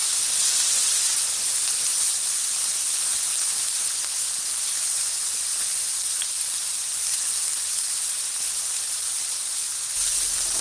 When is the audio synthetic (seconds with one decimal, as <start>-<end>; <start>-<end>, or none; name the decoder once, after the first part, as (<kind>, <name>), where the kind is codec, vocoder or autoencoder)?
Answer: 1.9-3.3 (vocoder, BigVGAN v2); 4.9-7.3; 8.0-10.6